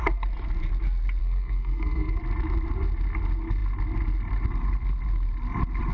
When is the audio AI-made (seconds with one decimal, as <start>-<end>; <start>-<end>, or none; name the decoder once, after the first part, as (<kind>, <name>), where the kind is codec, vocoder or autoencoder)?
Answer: 1.2-2.2 (codec, SNAC)